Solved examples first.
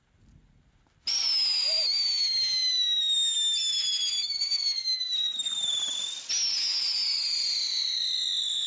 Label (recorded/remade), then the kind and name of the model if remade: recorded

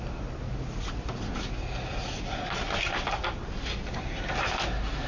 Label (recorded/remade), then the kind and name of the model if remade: recorded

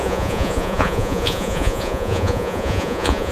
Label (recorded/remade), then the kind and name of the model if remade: remade, vocoder, Vocos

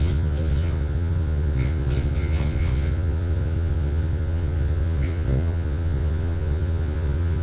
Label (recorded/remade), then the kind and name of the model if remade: remade, vocoder, Vocos